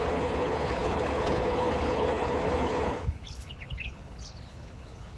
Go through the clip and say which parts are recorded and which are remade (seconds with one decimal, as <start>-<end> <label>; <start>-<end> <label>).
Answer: 0.0-5.2 remade